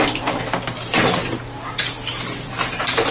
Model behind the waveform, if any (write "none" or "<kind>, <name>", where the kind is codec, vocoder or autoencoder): none